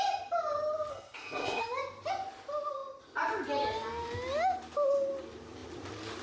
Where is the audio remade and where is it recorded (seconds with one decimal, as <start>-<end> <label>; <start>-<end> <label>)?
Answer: 0.0-0.9 recorded; 0.9-1.6 remade; 1.6-6.2 recorded

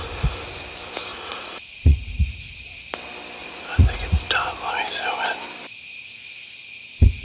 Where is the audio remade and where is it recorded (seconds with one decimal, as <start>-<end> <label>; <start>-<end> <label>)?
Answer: 0.0-1.1 recorded; 1.1-2.4 remade; 2.4-3.4 recorded; 3.4-4.2 remade; 4.2-7.2 recorded